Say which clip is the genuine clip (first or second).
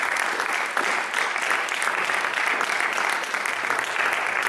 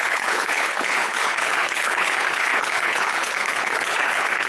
first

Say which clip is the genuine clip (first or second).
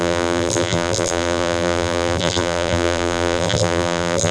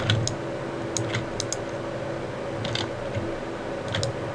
second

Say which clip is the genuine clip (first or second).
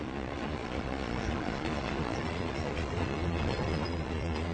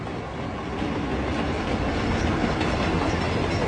second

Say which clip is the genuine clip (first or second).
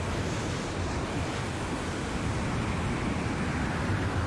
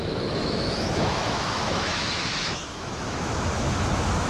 first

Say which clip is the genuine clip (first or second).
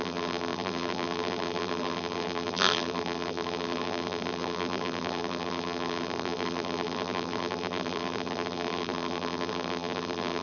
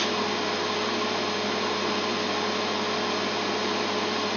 second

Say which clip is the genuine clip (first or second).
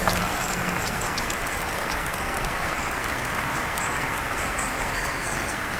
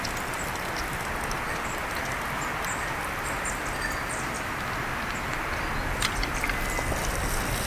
second